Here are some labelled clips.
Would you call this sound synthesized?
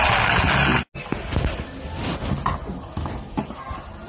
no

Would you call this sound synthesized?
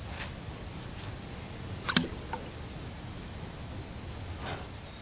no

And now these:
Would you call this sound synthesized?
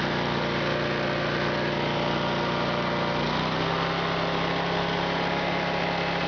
no